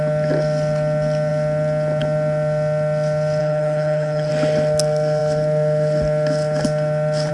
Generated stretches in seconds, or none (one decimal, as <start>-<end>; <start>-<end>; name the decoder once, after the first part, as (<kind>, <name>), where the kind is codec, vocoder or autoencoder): 3.4-4.3 (codec, HILCodec)